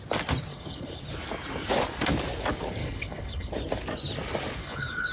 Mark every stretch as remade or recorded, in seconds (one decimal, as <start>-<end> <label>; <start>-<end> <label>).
0.0-0.5 recorded; 0.5-1.0 remade; 1.0-2.8 recorded; 2.8-3.5 remade; 3.5-4.6 recorded; 4.6-5.1 remade